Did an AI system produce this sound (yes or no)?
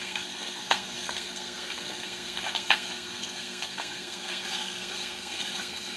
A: yes